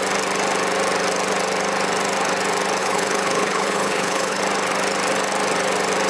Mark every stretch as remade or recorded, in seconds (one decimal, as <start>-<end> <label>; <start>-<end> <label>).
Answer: 0.0-2.8 recorded; 2.8-4.4 remade; 4.4-6.1 recorded